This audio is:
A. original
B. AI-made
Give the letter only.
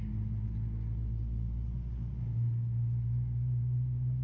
A